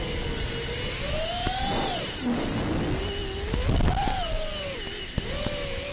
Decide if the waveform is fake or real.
real